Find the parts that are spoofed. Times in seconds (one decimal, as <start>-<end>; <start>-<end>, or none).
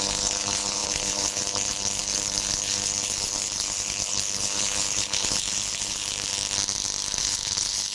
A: 0.0-6.3; 7.2-7.9